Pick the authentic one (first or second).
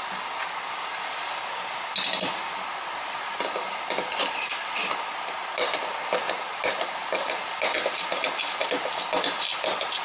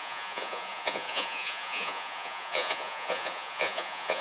first